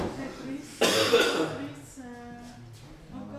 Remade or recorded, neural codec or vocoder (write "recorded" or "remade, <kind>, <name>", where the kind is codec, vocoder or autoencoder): recorded